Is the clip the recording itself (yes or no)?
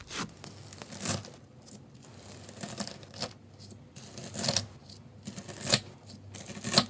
yes